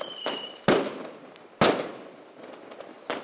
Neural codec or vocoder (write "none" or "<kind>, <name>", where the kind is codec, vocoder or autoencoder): none